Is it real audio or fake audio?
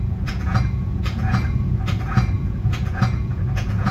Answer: fake